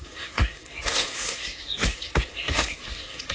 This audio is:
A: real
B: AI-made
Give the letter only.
B